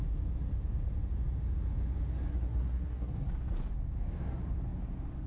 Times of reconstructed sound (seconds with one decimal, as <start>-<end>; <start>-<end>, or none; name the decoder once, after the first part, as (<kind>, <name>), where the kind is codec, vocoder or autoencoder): 2.3-3.3 (codec, SNAC)